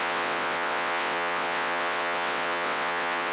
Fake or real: fake